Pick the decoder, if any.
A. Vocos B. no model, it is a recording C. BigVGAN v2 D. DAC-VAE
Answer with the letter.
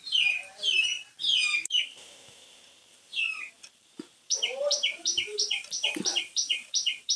C